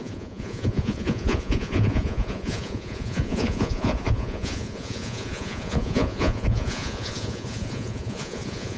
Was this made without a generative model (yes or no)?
no